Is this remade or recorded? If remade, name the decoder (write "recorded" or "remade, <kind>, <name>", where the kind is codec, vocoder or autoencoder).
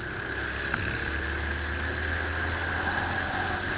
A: recorded